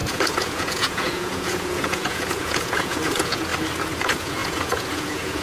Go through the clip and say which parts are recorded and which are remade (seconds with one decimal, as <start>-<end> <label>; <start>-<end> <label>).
0.0-3.5 remade; 3.5-4.0 recorded; 4.0-5.4 remade